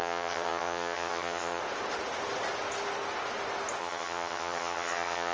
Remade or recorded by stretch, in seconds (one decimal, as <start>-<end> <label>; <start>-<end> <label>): 0.0-1.6 remade; 1.6-3.8 recorded; 3.8-5.3 remade